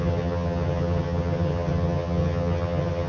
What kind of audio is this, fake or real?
fake